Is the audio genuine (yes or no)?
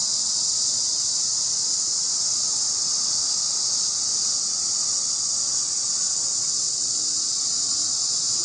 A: yes